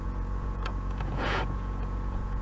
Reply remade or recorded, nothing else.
remade